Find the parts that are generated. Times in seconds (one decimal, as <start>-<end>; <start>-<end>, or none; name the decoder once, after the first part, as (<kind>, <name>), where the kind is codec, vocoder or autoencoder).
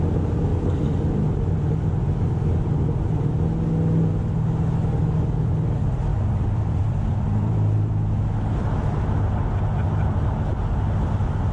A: 0.5-1.5 (vocoder, BigVGAN v2); 6.1-9.0